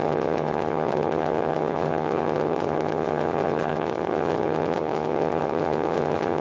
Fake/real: fake